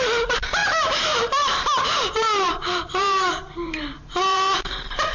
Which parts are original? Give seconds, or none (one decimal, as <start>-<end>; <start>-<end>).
none